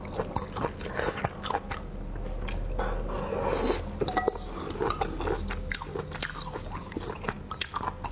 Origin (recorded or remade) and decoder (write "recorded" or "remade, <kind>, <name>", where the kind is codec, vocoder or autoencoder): recorded